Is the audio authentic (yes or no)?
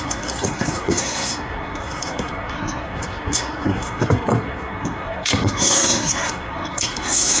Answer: no